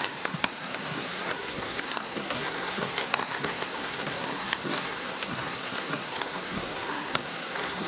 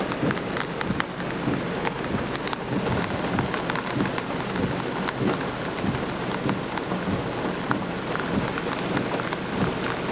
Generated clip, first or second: first